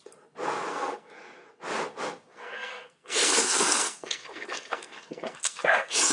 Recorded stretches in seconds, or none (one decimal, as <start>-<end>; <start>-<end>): 0.0-0.7; 1.5-2.3